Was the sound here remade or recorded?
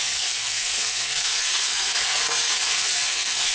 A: remade